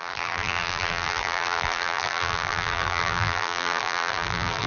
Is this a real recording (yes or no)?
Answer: no